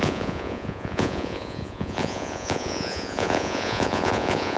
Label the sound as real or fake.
fake